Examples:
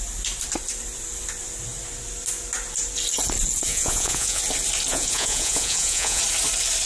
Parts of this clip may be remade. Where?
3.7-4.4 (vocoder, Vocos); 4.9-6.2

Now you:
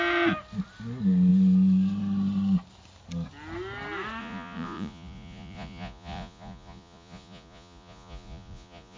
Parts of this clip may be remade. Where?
4.2-9.0 (vocoder, Vocos)